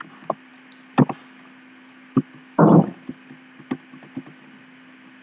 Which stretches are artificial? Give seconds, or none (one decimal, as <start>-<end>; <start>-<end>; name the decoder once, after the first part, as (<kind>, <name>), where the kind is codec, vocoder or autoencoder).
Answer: none